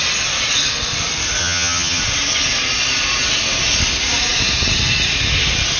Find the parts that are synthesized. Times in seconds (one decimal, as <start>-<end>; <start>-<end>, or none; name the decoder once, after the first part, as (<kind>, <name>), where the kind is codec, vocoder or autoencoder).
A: 1.4-2.0 (vocoder, HiFi-GAN)